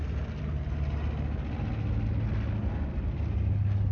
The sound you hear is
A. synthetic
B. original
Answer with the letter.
B